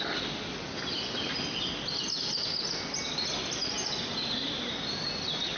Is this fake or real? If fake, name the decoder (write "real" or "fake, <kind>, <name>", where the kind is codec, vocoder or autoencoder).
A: real